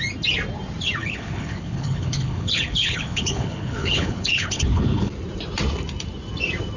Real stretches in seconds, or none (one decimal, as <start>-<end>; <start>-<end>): 0.0-1.0; 5.1-6.8